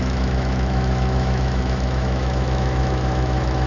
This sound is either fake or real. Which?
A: fake